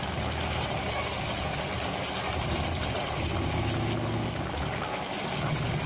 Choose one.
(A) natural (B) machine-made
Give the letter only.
A